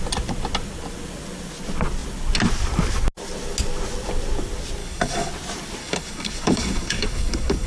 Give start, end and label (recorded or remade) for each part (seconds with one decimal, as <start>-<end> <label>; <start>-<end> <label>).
0.0-4.8 recorded; 4.8-5.3 remade; 5.3-5.8 recorded; 5.8-7.7 remade